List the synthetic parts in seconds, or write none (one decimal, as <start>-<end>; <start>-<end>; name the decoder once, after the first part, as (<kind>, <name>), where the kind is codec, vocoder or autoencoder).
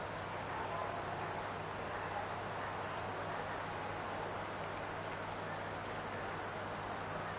none